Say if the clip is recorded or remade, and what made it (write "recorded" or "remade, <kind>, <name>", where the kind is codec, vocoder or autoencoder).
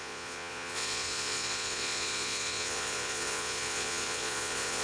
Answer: remade, vocoder, Vocos